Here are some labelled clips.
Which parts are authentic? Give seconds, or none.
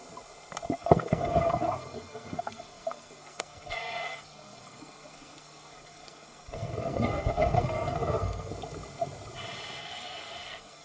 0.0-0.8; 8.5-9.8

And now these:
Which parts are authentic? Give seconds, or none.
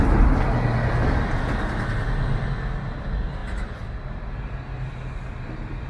0.0-5.9